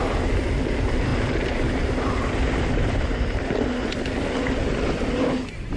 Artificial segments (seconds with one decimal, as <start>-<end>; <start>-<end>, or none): none